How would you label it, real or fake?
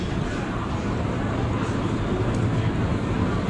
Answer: real